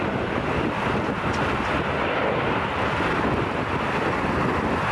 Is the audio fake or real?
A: real